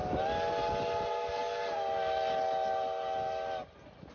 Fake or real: real